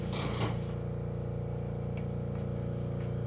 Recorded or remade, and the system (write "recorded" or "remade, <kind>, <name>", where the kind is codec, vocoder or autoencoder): recorded